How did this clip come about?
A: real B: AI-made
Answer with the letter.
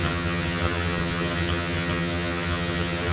B